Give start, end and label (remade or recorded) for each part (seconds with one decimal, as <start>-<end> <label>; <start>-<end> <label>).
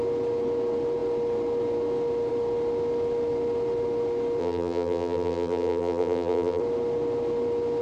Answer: 0.0-4.4 recorded; 4.4-6.6 remade; 6.6-7.8 recorded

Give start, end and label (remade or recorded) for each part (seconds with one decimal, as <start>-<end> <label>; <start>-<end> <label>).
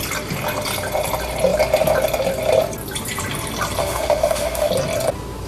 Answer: 0.0-3.8 recorded; 3.8-4.7 remade; 4.7-5.5 recorded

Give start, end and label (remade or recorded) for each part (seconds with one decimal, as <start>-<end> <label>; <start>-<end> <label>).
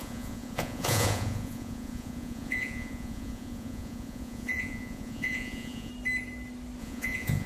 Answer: 0.0-5.9 remade; 5.9-6.8 recorded; 6.8-7.5 remade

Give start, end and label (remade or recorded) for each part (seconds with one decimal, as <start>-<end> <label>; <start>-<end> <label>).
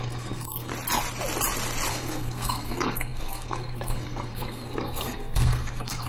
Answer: 0.0-0.7 remade; 0.7-1.9 recorded; 1.9-6.1 remade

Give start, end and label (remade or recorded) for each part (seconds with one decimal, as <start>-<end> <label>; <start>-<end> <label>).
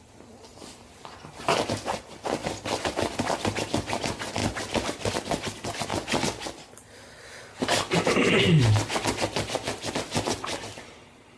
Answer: 0.0-0.5 recorded; 0.5-1.5 remade; 1.5-11.4 recorded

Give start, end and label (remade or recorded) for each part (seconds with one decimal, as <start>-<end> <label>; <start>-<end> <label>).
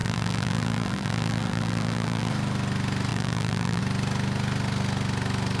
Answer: 0.0-2.3 remade; 2.3-3.1 recorded; 3.1-3.8 remade; 3.8-5.6 recorded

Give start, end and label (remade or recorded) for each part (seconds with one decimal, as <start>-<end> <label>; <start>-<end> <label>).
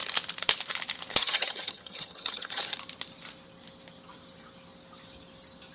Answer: 0.0-1.2 recorded; 1.2-2.6 remade; 2.6-5.7 recorded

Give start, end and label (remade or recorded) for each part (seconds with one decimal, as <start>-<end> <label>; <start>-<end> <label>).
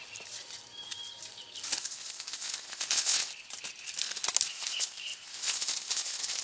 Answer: 0.0-1.8 recorded; 1.8-3.3 remade; 3.3-4.5 recorded; 4.5-6.4 remade